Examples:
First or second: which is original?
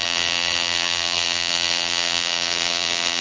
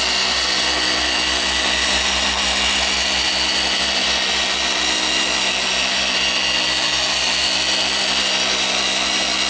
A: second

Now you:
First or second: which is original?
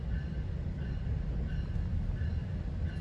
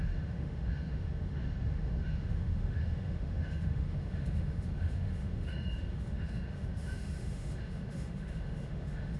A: first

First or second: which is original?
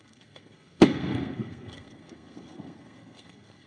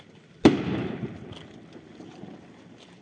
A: second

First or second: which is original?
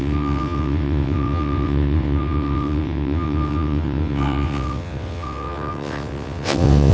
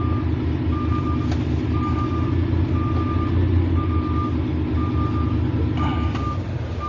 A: second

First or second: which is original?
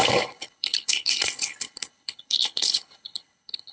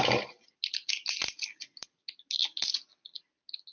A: second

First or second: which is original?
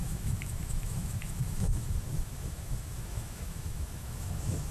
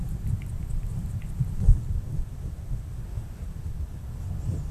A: second